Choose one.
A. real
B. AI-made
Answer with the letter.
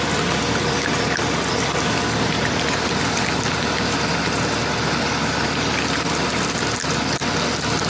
A